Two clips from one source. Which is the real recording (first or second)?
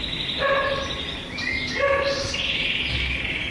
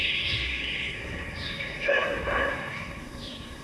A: first